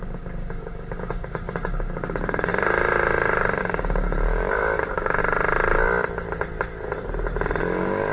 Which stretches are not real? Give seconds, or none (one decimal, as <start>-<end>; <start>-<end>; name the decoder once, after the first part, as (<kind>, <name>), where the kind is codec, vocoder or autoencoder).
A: 0.0-2.5 (codec, DAC); 3.6-5.2; 7.6-8.1